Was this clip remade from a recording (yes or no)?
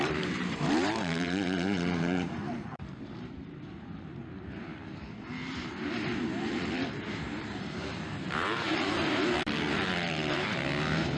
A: yes